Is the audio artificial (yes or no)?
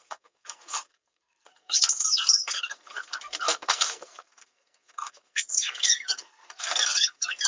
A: yes